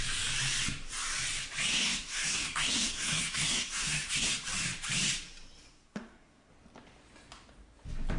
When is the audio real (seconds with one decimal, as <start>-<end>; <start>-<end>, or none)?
0.0-1.7; 4.3-5.7; 6.5-8.2